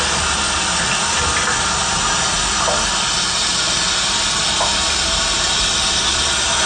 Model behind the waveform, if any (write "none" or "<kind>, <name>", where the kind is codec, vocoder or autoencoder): none